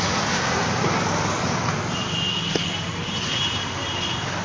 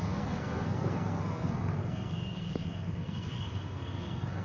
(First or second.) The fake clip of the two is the second